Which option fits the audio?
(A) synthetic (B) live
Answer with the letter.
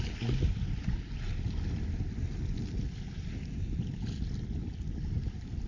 B